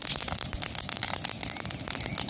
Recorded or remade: recorded